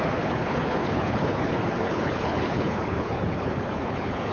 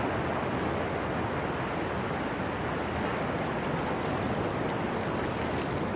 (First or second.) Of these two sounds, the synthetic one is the first